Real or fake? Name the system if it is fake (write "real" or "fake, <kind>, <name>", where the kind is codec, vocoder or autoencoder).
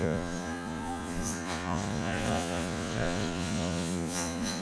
fake, vocoder, Vocos